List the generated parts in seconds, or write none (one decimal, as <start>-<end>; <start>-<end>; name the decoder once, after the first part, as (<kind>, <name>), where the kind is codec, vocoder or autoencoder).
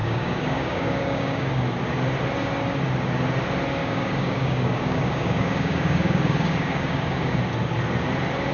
0.0-1.6 (codec, DAC); 3.8-7.4